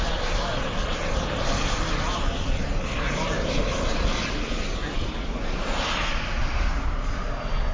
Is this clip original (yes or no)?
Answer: yes